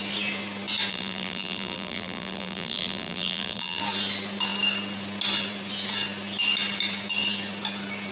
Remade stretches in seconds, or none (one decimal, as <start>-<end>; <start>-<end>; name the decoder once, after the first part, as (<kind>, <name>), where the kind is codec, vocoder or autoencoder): 0.9-3.8 (vocoder, BigVGAN v2)